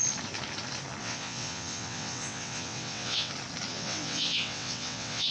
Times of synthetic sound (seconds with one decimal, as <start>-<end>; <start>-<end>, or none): 1.0-3.3; 3.7-5.3